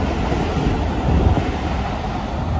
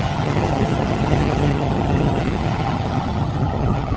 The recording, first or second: first